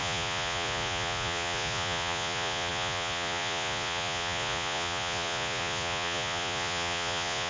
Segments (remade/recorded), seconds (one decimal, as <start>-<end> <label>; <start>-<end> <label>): 0.0-7.5 remade